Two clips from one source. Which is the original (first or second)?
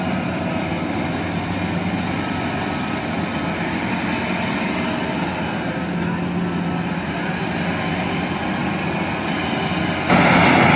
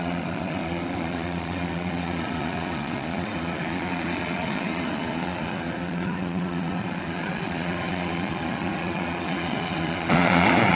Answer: first